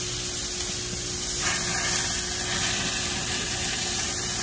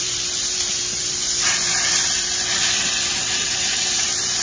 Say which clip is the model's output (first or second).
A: second